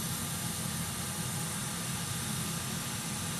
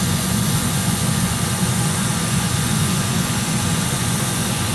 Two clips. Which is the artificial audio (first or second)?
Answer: second